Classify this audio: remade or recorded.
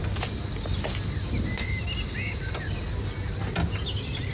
recorded